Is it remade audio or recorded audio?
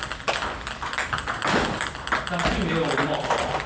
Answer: recorded